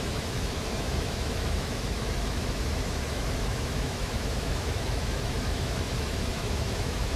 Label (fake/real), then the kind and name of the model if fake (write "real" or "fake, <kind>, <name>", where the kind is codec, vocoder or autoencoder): fake, autoencoder, DAC-VAE